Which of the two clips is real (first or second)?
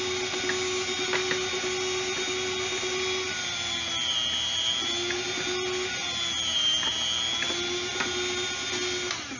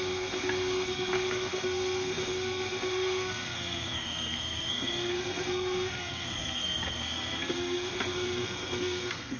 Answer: first